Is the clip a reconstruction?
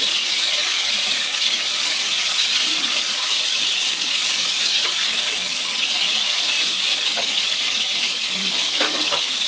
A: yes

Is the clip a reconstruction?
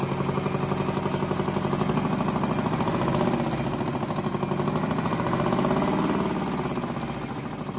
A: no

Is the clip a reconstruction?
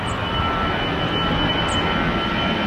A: no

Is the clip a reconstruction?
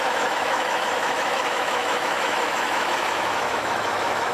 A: yes